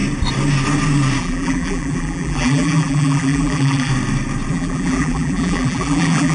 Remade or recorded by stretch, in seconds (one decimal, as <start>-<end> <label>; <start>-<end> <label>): 0.0-1.2 recorded; 1.2-3.9 remade; 3.9-4.5 recorded; 4.5-6.3 remade